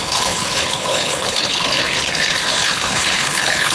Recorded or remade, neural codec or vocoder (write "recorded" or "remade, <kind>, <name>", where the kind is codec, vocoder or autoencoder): remade, codec, HILCodec